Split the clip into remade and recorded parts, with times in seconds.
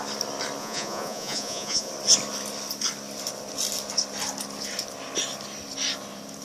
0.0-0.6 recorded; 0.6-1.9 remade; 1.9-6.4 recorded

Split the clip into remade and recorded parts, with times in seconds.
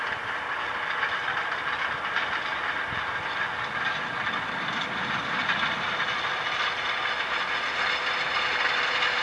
0.0-9.2 recorded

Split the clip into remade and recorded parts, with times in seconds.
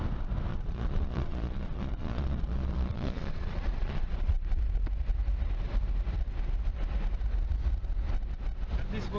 0.0-0.5 recorded; 0.5-4.6 remade; 4.6-9.2 recorded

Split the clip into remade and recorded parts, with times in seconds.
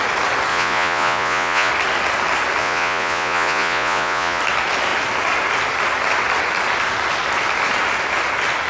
0.0-0.5 recorded; 0.5-1.7 remade; 1.7-2.6 recorded; 2.6-4.4 remade; 4.4-8.7 recorded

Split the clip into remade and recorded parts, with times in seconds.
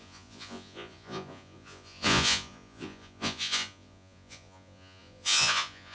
0.0-5.9 remade